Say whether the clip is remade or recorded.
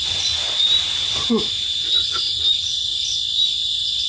recorded